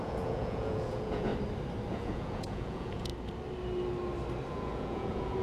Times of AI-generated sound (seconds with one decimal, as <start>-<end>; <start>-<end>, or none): 0.0-1.3; 1.9-3.1; 4.5-5.4

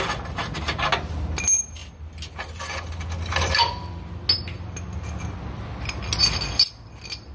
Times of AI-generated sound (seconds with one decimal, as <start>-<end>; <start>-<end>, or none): none

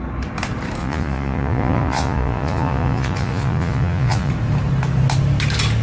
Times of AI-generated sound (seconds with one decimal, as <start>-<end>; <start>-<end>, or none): 0.8-4.3

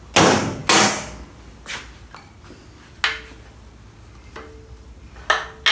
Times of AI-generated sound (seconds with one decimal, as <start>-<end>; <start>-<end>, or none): none

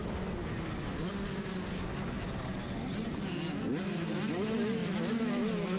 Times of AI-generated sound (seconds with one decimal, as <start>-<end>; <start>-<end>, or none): none

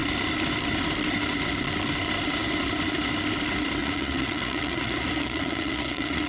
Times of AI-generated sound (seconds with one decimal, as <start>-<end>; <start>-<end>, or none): 3.8-6.3

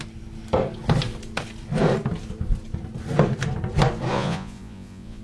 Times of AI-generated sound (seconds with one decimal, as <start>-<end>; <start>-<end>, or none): 4.1-5.2

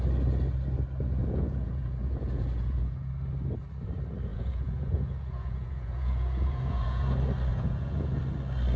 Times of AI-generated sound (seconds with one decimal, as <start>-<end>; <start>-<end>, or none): 1.2-3.1; 4.3-7.0; 7.5-8.2